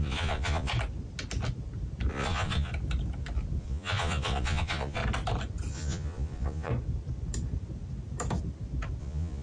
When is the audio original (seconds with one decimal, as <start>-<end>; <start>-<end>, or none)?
0.7-2.1; 2.7-3.6; 5.0-5.7; 6.7-9.0